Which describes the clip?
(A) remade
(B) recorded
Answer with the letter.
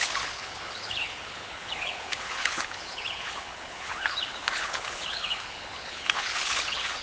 A